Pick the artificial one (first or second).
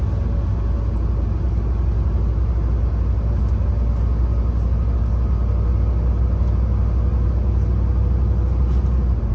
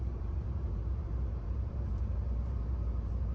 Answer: second